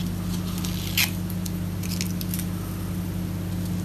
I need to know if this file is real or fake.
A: real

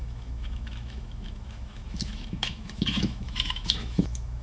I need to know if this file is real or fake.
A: fake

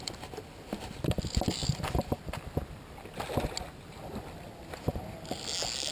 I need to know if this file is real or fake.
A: real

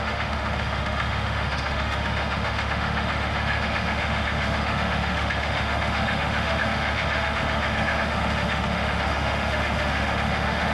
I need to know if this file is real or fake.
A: fake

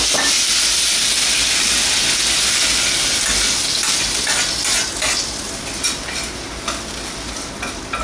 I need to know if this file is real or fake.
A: real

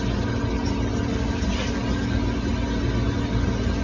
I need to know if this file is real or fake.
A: real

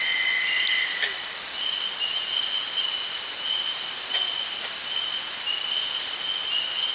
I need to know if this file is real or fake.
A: real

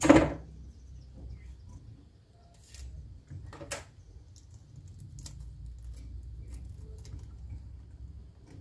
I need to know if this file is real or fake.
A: real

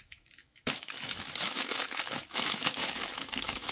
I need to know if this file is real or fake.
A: fake